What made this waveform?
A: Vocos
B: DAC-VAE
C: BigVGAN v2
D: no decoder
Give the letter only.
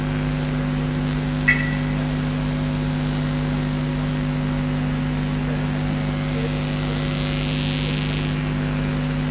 D